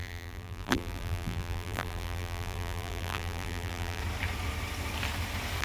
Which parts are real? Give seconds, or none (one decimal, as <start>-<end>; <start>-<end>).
4.0-5.6